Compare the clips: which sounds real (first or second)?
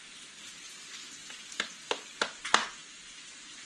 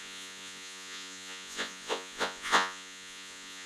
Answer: first